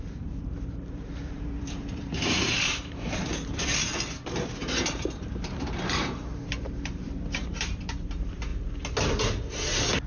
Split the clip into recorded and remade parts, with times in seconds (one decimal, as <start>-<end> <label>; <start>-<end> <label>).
0.0-8.5 remade; 8.5-10.1 recorded